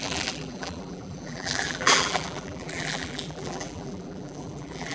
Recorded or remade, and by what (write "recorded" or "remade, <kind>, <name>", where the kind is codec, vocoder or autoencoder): remade, vocoder, BigVGAN v2